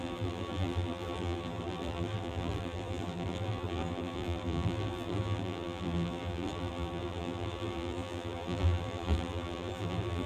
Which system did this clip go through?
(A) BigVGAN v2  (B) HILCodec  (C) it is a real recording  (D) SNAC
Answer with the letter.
A